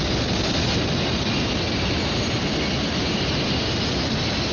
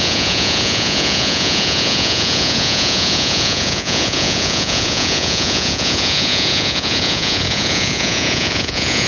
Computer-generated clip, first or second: second